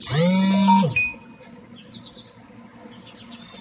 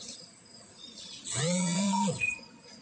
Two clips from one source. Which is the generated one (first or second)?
second